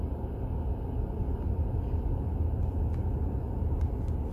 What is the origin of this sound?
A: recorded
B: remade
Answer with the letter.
A